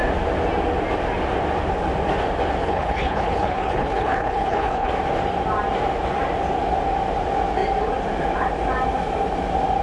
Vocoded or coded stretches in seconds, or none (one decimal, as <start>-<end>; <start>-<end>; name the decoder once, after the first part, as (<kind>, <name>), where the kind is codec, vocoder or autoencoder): 2.6-4.9 (codec, HILCodec)